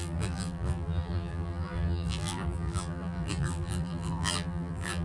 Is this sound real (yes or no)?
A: no